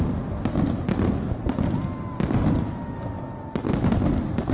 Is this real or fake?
real